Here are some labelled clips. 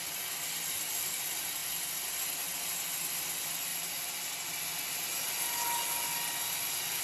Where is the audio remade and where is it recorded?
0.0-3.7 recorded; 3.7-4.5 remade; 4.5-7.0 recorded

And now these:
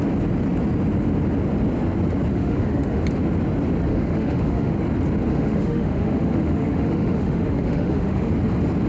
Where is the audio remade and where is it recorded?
0.0-2.3 recorded; 2.3-3.0 remade; 3.0-3.9 recorded; 3.9-4.7 remade; 4.7-5.3 recorded; 5.3-8.3 remade; 8.3-8.9 recorded

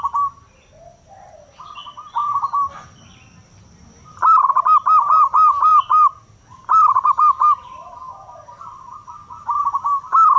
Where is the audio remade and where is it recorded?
0.0-10.4 recorded

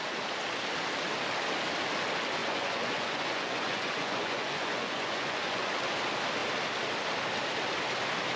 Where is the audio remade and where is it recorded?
0.0-2.4 recorded; 2.4-5.7 remade; 5.7-8.4 recorded

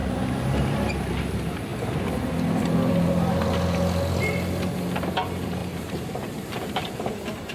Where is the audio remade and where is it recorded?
0.0-0.9 remade; 0.9-5.6 recorded; 5.6-7.1 remade; 7.1-7.5 recorded

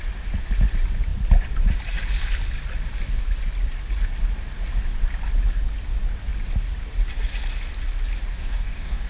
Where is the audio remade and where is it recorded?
0.0-8.3 recorded; 8.3-9.1 remade